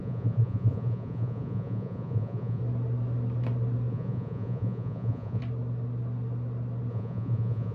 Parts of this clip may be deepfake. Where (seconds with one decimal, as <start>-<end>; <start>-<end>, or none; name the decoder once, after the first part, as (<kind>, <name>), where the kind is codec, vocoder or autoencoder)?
0.0-2.6 (vocoder, Vocos); 3.9-5.4; 6.9-7.7